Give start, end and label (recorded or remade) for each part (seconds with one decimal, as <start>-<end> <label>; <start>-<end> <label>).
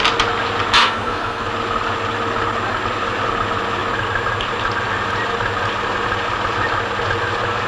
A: 0.0-0.8 recorded; 0.8-1.5 remade; 1.5-7.7 recorded